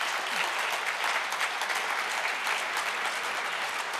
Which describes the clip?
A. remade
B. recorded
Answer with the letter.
B